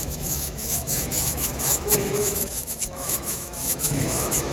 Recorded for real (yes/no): no